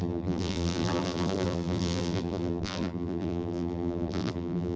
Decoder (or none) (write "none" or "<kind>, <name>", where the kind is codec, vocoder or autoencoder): vocoder, BigVGAN v2